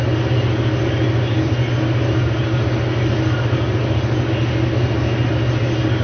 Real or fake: real